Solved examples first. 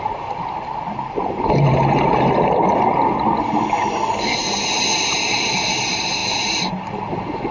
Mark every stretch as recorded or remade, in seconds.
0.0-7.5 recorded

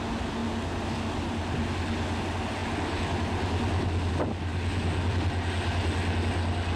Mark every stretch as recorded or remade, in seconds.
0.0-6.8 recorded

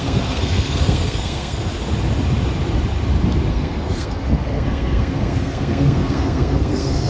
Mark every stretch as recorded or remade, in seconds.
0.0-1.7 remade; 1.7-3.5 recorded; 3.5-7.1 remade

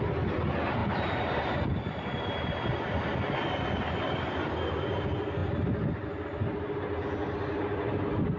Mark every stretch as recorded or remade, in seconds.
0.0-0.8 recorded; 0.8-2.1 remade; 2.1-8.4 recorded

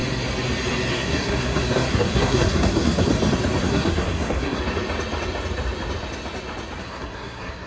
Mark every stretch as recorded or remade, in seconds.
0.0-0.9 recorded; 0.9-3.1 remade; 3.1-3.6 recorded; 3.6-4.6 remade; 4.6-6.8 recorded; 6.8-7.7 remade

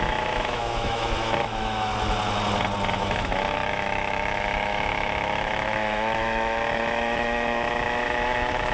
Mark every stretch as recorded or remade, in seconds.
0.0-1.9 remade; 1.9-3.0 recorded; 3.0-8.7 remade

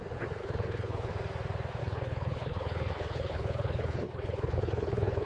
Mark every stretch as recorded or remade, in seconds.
0.0-0.4 recorded; 0.4-1.1 remade; 1.1-1.8 recorded; 1.8-5.3 remade

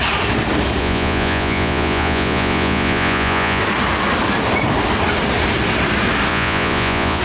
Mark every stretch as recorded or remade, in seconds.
0.0-0.8 recorded; 0.8-3.6 remade; 3.6-6.3 recorded; 6.3-7.2 remade